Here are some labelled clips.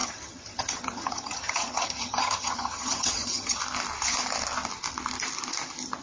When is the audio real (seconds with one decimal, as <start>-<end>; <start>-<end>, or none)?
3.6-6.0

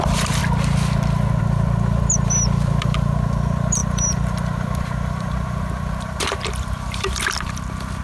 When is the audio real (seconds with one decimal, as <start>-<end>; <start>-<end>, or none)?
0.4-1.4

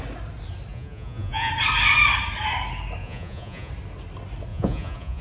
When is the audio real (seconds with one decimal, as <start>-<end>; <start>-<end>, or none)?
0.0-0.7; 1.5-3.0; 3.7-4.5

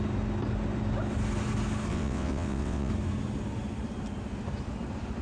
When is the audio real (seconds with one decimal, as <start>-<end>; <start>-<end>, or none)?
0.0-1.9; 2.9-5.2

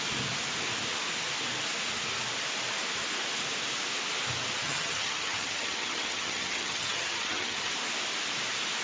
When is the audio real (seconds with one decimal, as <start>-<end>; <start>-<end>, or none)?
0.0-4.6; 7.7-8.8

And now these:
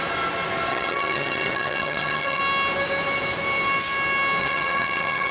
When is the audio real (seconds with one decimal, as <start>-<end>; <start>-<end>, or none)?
0.0-0.7; 2.4-4.4

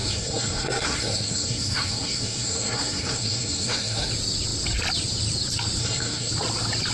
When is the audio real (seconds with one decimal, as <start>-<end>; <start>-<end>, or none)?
4.1-5.8; 6.3-6.9